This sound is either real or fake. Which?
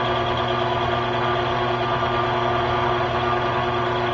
real